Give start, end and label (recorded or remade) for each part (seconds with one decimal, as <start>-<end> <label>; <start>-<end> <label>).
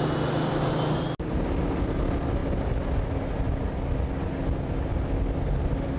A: 0.0-6.0 recorded